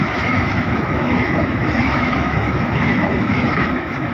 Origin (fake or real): fake